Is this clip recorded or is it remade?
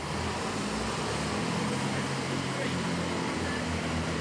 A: recorded